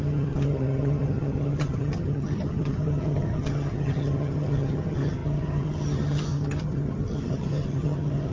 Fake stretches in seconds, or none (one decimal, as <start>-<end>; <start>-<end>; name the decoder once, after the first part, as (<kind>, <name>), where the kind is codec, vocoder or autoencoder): 0.0-8.3 (vocoder, HiFi-GAN)